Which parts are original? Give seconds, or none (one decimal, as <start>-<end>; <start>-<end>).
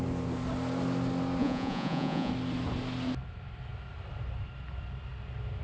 0.0-1.4; 2.3-5.6